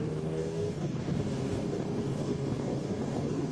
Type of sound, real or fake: fake